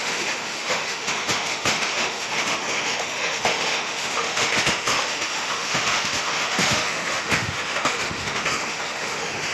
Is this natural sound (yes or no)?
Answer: no